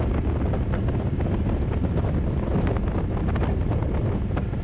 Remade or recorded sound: recorded